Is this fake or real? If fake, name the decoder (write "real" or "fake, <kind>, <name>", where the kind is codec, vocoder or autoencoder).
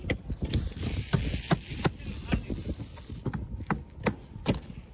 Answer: real